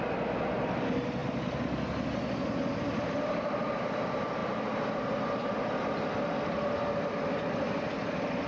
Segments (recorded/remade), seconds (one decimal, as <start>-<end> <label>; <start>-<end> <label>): 0.0-8.5 recorded